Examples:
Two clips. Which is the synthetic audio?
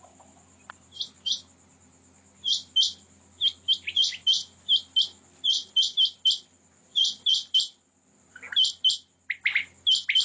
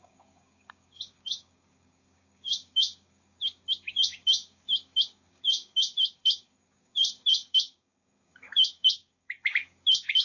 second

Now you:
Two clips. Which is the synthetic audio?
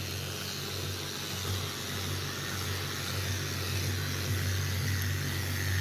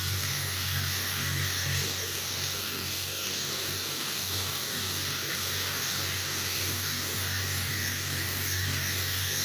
second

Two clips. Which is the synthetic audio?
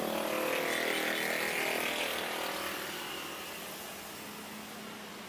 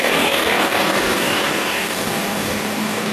second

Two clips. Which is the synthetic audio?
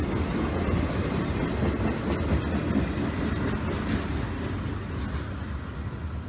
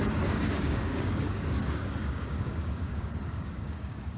second